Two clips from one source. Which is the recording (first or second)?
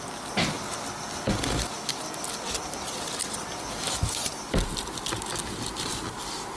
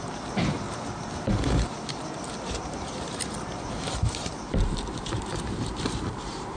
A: first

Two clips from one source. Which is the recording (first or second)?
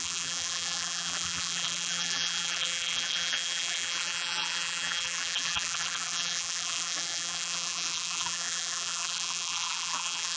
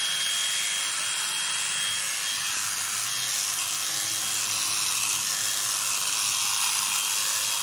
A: second